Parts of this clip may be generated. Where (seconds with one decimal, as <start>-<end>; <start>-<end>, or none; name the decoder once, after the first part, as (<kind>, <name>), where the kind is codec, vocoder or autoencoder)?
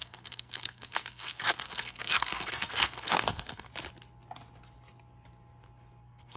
0.0-3.7 (codec, SNAC); 6.0-6.4